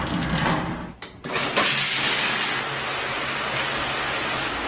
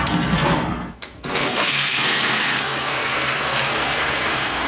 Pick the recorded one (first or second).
first